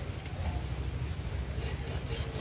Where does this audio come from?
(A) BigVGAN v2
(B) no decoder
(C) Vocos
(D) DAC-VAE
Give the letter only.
B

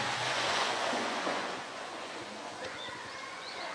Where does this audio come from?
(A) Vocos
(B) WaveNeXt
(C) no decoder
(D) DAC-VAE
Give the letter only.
A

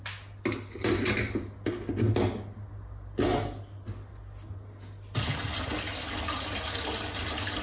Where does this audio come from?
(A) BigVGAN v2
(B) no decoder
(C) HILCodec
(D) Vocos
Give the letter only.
B